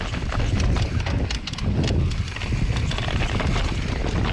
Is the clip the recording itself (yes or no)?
yes